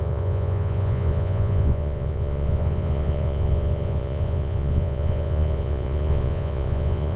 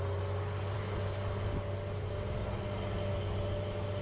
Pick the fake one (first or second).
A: first